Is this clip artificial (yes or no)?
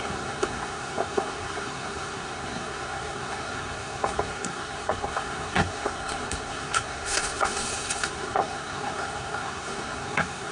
yes